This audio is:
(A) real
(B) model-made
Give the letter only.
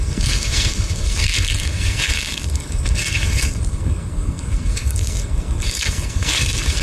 B